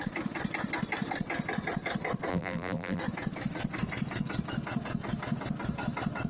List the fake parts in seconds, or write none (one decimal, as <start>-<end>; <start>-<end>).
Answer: 2.3-3.0